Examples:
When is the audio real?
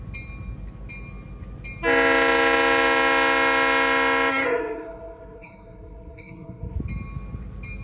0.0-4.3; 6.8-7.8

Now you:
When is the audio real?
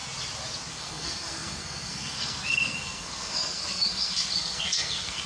0.0-0.7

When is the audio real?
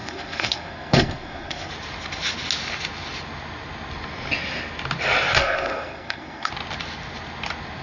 1.7-5.4; 6.5-7.8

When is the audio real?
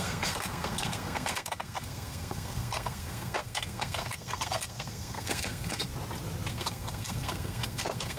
5.9-6.5